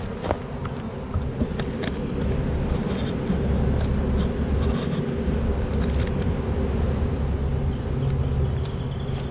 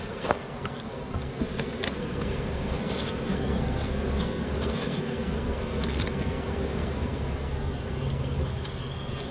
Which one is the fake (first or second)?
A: second